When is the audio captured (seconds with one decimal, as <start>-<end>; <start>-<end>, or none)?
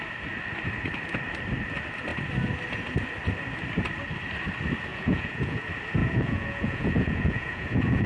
0.0-4.9; 5.6-6.0